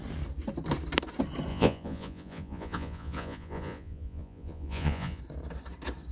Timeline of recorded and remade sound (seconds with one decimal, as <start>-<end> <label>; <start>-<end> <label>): 0.0-1.5 recorded; 1.5-5.2 remade; 5.2-6.1 recorded